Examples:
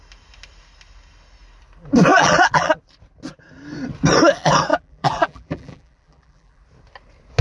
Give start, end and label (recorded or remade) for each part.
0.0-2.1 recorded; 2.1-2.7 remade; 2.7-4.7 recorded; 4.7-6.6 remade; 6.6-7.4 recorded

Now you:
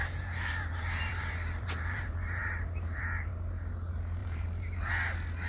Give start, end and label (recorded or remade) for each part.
0.0-3.3 remade; 3.3-4.2 recorded; 4.2-4.9 remade; 4.9-5.5 recorded

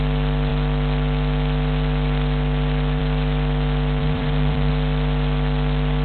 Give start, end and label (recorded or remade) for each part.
0.0-4.0 recorded; 4.0-4.7 remade; 4.7-6.0 recorded

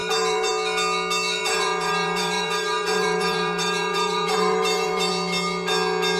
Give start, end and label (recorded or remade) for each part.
0.0-0.5 remade; 0.5-1.4 recorded; 1.4-5.1 remade; 5.1-6.2 recorded

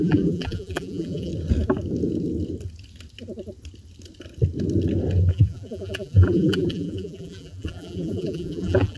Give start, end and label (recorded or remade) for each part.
0.0-1.3 remade; 1.3-5.3 recorded; 5.3-9.0 remade

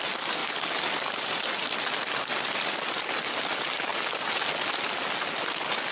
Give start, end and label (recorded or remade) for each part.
0.0-5.9 recorded

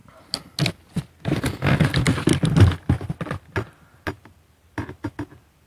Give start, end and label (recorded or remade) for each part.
0.0-5.7 recorded

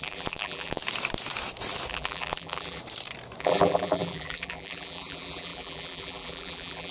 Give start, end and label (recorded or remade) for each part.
0.0-0.8 remade; 0.8-1.9 recorded; 1.9-2.8 remade; 2.8-3.4 recorded; 3.4-6.9 remade